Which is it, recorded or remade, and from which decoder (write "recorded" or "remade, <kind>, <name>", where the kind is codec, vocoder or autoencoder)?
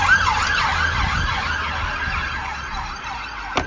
recorded